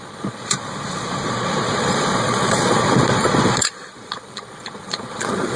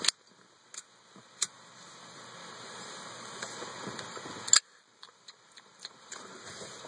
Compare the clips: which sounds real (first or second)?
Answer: second